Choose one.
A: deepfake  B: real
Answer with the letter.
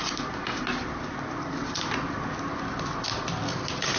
B